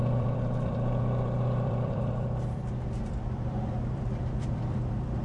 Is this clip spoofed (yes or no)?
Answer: yes